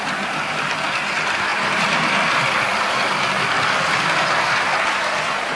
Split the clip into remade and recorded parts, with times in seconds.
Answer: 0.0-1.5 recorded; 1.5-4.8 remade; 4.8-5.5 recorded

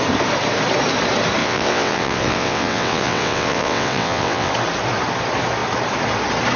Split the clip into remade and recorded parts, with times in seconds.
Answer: 0.0-1.4 recorded; 1.4-4.5 remade; 4.5-6.6 recorded

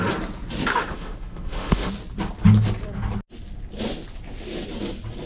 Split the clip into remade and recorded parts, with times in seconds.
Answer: 0.0-0.7 recorded; 0.7-1.9 remade; 1.9-5.3 recorded

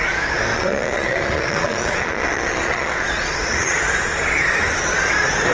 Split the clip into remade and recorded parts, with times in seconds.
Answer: 0.0-0.5 recorded; 0.5-3.8 remade; 3.8-5.5 recorded

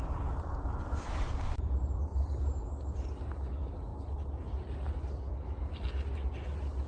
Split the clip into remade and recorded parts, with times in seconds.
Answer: 0.0-6.9 recorded